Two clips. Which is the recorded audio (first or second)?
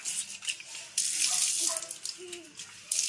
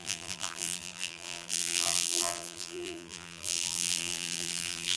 first